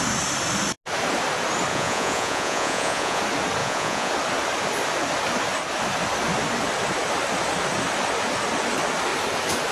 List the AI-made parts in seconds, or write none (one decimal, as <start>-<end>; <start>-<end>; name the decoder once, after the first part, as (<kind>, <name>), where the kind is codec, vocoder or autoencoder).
1.7-3.2 (vocoder, Vocos); 3.6-4.1